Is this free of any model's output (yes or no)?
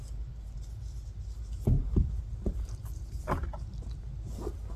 yes